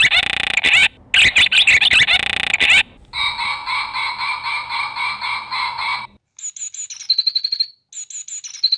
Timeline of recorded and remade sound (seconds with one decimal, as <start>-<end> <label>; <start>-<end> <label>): 0.0-8.8 recorded